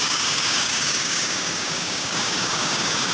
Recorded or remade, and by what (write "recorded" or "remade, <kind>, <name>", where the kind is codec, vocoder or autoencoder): remade, codec, DAC